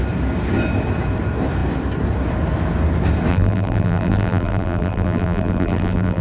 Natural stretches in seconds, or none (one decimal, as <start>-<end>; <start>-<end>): 0.0-3.3